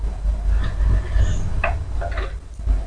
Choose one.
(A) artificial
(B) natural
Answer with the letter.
B